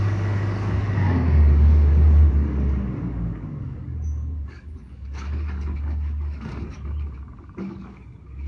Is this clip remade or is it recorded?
remade